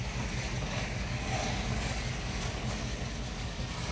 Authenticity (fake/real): fake